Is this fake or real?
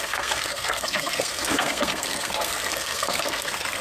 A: fake